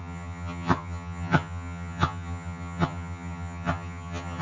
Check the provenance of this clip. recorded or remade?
remade